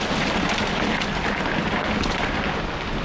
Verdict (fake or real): real